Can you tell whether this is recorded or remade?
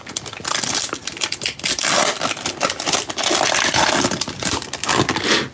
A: recorded